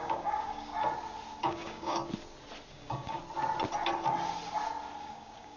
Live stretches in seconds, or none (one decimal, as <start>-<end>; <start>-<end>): 0.7-1.4; 2.0-2.7; 3.2-5.0